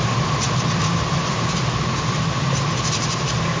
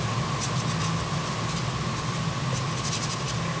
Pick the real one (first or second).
second